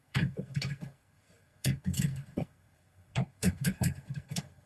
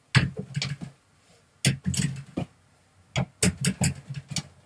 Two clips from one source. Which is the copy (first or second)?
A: first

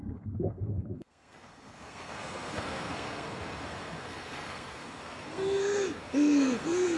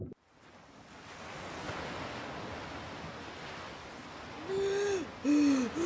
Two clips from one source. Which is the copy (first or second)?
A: first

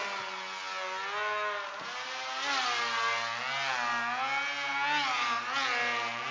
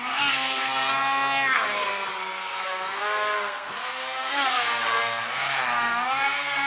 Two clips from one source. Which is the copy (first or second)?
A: second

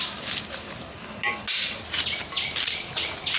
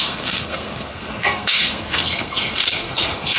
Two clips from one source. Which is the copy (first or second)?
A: second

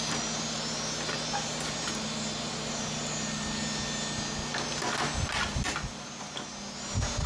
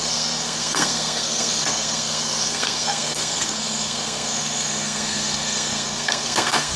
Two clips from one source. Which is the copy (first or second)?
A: second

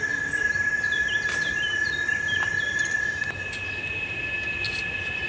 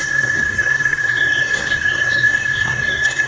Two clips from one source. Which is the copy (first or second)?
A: second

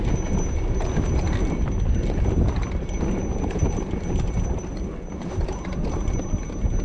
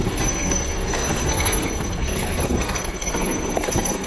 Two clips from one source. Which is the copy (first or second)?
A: second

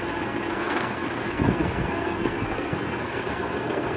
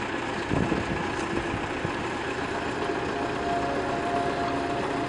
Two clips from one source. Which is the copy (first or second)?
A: first